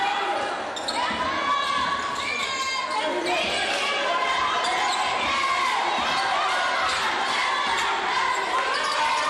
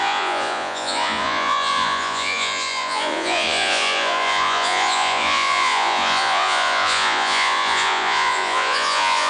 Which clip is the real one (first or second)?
first